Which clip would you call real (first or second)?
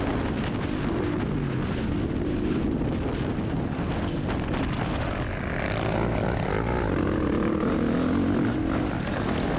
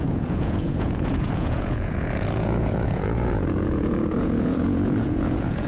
first